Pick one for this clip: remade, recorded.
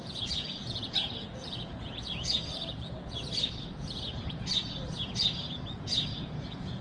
remade